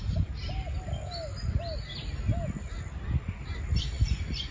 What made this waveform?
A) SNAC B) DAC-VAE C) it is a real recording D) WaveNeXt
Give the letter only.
C